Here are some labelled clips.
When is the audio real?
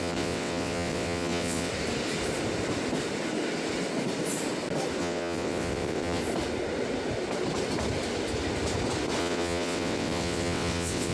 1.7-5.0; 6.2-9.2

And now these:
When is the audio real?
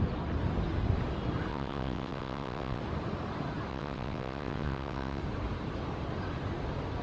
0.0-1.5; 2.8-3.7; 5.2-7.0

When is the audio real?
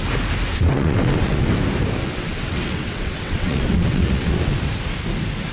0.0-0.5; 1.5-2.0; 4.6-5.5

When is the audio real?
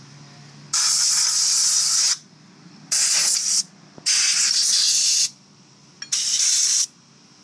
0.0-7.4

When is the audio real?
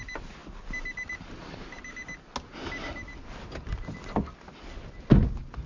0.0-5.7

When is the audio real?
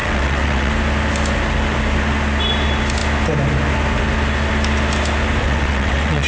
0.7-5.4